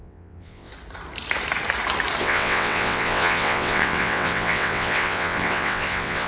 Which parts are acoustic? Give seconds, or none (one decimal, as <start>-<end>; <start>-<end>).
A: 0.7-2.2